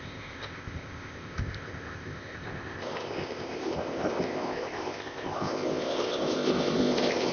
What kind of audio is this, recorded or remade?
remade